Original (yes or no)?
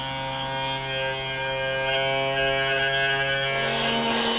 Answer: yes